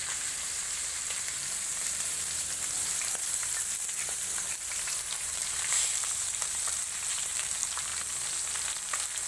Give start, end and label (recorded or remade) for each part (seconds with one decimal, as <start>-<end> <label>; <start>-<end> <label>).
0.0-7.9 remade; 7.9-9.3 recorded